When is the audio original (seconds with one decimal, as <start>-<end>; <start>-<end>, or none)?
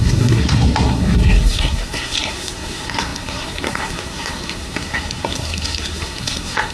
none